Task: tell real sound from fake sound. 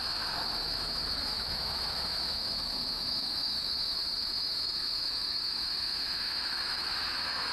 fake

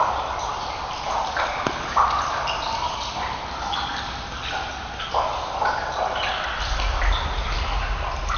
real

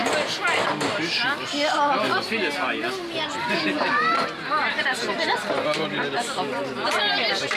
real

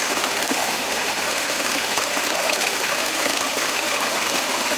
fake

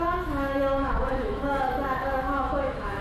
fake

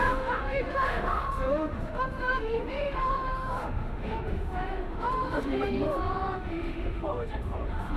fake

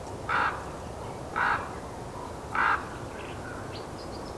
real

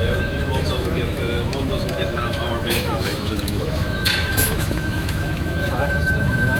fake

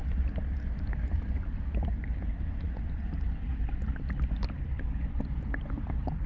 real